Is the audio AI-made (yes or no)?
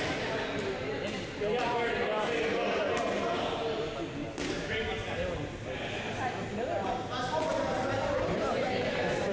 no